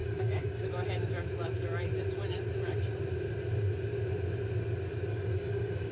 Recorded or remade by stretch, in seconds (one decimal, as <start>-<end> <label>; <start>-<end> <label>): 0.0-0.7 remade; 0.7-5.1 recorded; 5.1-5.9 remade